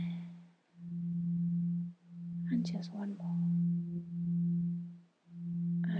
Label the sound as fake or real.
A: real